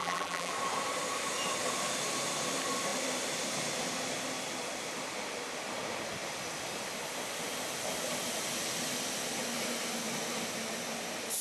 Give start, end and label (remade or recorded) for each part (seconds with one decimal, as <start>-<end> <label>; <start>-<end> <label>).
0.0-0.5 remade; 0.5-11.4 recorded

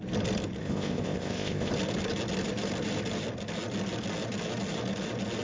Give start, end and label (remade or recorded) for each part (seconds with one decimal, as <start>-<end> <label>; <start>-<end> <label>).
0.0-0.6 recorded; 0.6-1.7 remade; 1.7-5.4 recorded

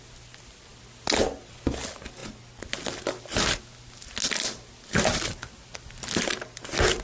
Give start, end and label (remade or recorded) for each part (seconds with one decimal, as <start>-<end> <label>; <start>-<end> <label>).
0.0-7.0 recorded

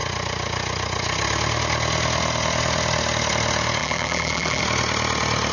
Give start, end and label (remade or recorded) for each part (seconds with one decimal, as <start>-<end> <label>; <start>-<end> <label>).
0.0-3.8 recorded; 3.8-4.6 remade; 4.6-5.5 recorded

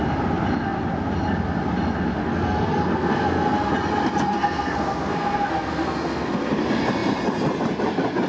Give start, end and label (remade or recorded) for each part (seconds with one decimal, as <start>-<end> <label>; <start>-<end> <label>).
0.0-2.2 recorded; 2.2-3.7 remade; 3.7-4.3 recorded; 4.3-6.5 remade; 6.5-8.3 recorded

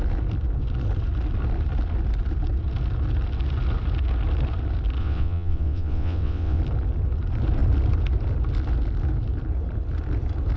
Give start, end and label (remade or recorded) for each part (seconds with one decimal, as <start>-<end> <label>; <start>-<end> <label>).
0.0-5.0 recorded; 5.0-6.6 remade; 6.6-10.6 recorded